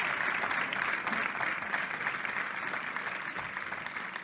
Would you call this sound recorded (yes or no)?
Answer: yes